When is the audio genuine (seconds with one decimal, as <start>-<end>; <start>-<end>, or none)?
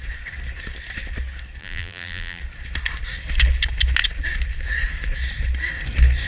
0.0-1.6; 2.4-6.3